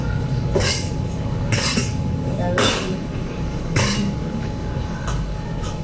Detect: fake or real fake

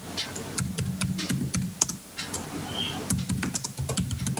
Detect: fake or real real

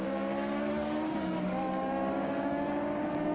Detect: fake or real fake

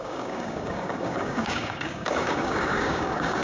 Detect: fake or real fake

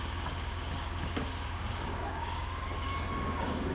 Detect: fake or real fake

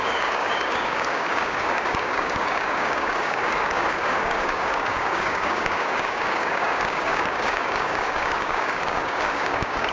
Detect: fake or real fake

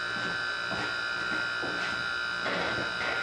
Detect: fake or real real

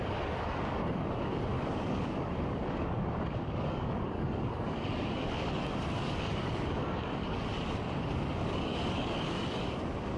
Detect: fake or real fake